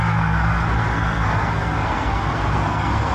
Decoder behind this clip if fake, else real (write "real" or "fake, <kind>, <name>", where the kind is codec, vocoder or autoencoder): fake, codec, SNAC